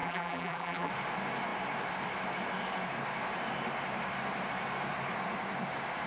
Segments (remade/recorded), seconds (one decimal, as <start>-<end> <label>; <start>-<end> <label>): 0.0-0.9 remade; 0.9-6.1 recorded